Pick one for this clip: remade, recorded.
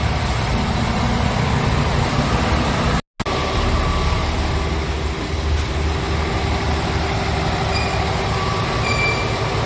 recorded